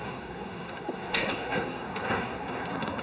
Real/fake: fake